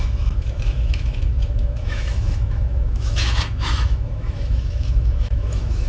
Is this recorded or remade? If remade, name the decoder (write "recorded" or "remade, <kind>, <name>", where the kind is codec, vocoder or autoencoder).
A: remade, autoencoder, DAC-VAE